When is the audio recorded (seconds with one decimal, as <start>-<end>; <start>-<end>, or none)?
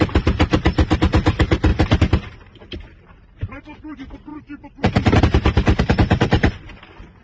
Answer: 1.7-3.0